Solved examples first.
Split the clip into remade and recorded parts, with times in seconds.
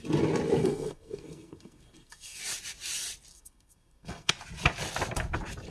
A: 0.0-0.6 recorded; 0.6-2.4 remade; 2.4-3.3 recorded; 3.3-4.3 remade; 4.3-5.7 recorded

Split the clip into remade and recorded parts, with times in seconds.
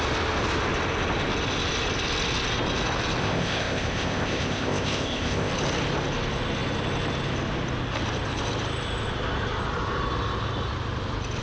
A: 0.0-3.2 recorded; 3.2-5.5 remade; 5.5-11.4 recorded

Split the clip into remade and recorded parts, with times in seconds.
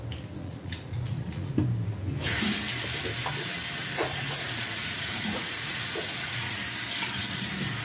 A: 0.0-0.4 recorded; 0.4-1.5 remade; 1.5-4.0 recorded; 4.0-6.6 remade; 6.6-7.8 recorded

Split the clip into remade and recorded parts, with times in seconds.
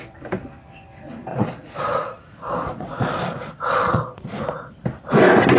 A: 0.0-1.3 recorded; 1.3-4.7 remade; 4.7-5.6 recorded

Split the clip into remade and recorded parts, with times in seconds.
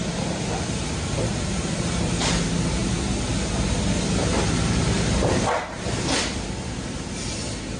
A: 0.0-2.8 remade; 2.8-4.0 recorded; 4.0-7.8 remade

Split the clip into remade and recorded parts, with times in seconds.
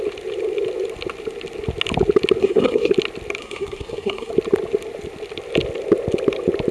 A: 0.0-2.4 recorded; 2.4-2.9 remade; 2.9-3.4 recorded; 3.4-4.3 remade; 4.3-6.7 recorded